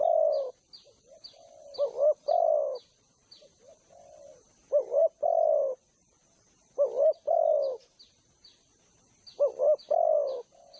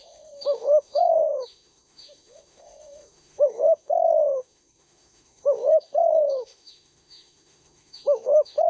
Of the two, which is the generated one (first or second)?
second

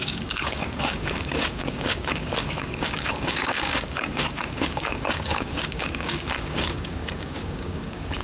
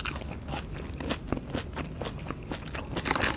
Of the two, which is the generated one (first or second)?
first